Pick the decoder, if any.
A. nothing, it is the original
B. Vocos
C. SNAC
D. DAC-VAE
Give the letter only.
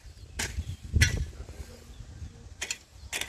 A